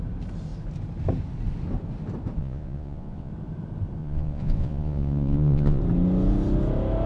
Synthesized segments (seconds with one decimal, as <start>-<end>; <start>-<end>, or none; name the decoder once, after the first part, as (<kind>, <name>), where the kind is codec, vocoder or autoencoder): 2.4-3.3 (vocoder, Vocos); 4.0-5.8